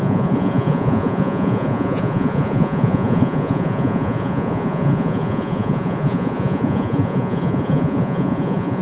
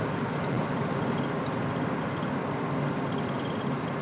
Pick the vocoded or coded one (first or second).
first